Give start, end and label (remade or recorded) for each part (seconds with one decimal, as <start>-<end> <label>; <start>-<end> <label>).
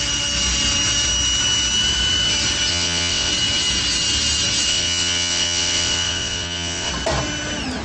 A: 0.0-2.7 recorded; 2.7-3.3 remade; 3.3-4.7 recorded; 4.7-6.9 remade; 6.9-7.8 recorded